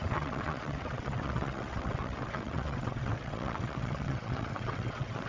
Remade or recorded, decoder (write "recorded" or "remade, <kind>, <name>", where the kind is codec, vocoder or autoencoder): remade, vocoder, WaveNeXt